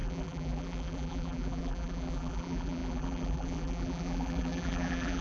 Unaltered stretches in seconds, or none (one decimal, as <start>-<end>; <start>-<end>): none